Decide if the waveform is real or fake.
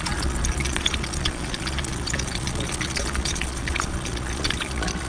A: fake